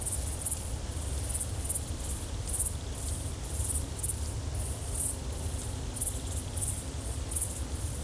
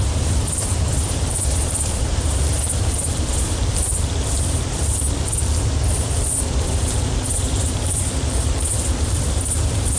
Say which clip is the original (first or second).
first